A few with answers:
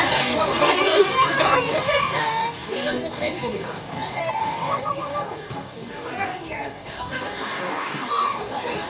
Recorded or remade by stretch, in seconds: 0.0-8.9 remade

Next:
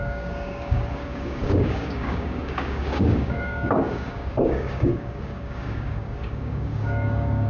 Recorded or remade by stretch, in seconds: 0.0-7.5 remade

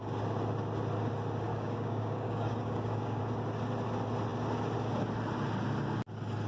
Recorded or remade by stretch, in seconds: 0.0-1.5 recorded; 1.5-3.2 remade; 3.2-6.5 recorded

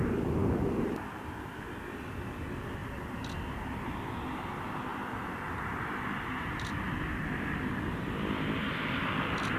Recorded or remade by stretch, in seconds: 0.0-9.6 recorded

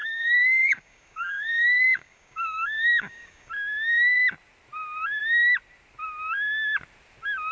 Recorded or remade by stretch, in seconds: 0.0-3.5 remade; 3.5-7.5 recorded

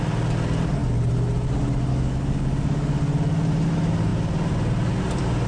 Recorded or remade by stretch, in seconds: 0.0-1.9 recorded; 1.9-3.0 remade; 3.0-5.5 recorded